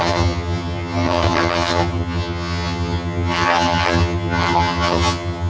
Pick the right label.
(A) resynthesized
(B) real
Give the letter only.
A